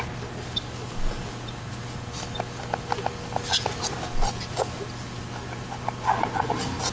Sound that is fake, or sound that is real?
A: real